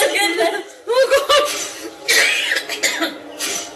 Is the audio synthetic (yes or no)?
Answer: no